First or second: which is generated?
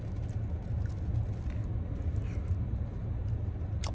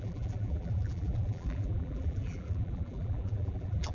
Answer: second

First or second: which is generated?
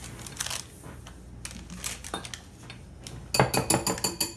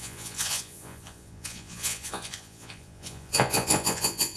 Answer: second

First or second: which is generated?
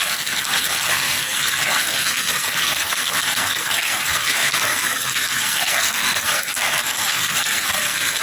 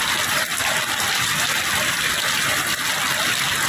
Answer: first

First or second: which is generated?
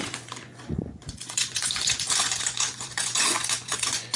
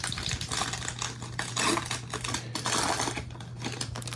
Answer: first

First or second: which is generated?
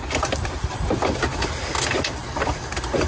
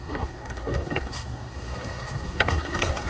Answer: second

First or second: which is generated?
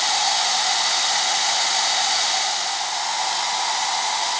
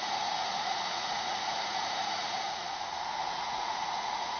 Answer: second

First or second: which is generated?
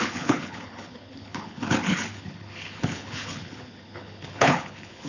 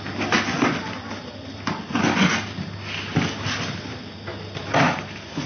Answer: first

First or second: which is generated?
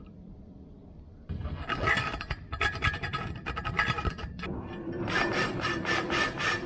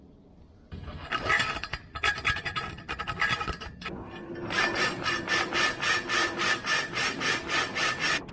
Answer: first